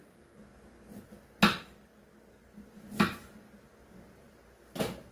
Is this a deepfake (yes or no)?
no